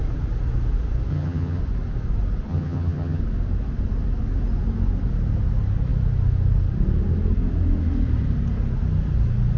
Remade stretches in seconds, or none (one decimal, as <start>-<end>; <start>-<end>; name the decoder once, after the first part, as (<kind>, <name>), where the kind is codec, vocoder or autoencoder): 1.1-1.6 (vocoder, HiFi-GAN); 2.5-3.2